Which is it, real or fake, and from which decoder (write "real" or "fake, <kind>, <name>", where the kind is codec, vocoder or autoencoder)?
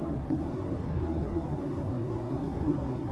fake, codec, SNAC